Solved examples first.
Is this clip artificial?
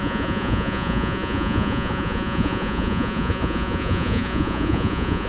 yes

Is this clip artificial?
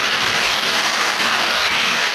yes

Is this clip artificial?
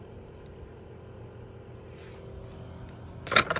no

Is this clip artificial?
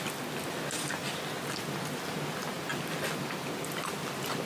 no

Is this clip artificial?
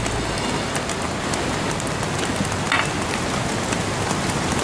no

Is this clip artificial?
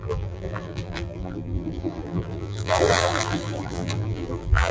yes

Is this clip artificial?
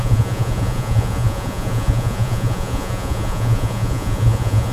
yes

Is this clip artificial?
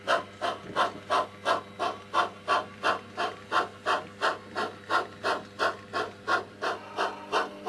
no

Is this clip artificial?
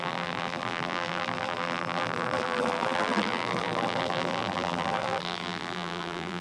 yes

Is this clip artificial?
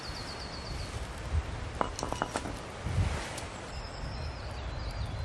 no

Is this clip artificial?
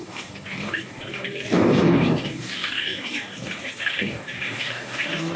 yes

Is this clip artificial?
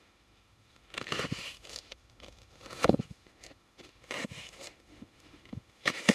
yes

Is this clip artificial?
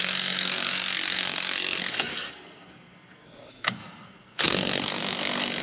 yes